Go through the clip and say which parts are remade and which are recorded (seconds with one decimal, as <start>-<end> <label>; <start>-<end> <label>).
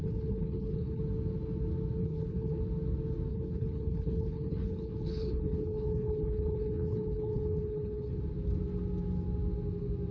0.0-1.0 remade; 1.0-2.0 recorded; 2.0-2.6 remade; 2.6-3.3 recorded; 3.3-8.2 remade; 8.2-10.1 recorded